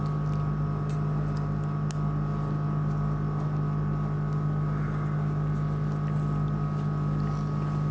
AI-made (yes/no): no